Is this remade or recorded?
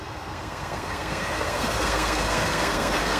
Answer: remade